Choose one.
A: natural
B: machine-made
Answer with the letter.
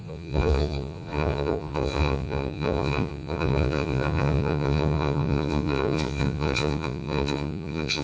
B